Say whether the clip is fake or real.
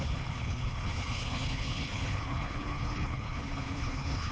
fake